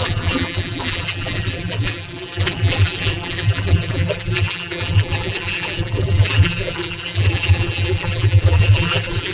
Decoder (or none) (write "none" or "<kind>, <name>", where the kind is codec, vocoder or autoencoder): vocoder, BigVGAN v2